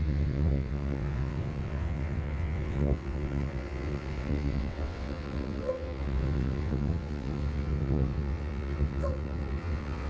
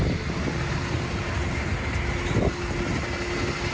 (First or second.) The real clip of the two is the second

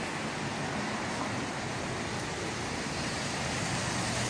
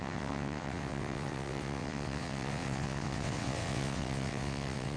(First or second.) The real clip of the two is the first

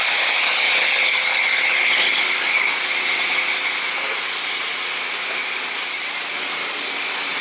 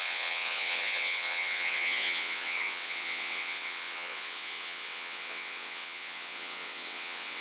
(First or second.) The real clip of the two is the first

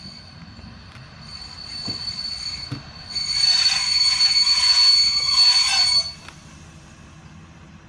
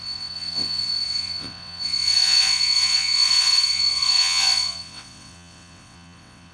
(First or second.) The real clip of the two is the first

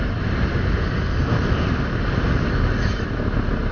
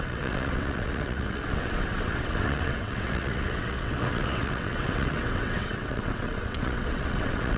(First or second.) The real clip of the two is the first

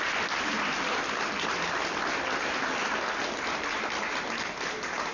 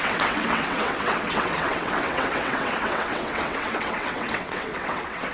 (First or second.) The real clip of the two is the first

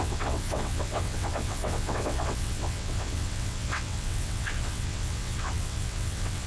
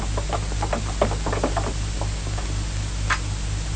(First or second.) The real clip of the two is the second